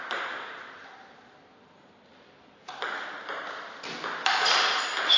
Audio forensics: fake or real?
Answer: real